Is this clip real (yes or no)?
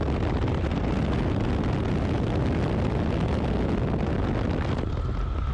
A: yes